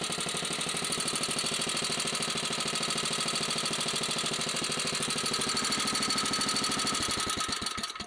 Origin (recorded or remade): recorded